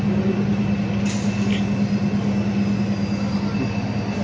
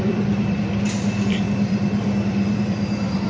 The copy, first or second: second